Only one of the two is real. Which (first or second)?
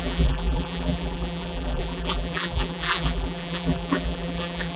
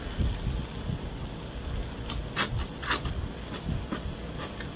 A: second